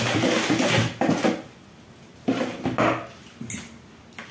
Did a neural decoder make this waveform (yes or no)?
no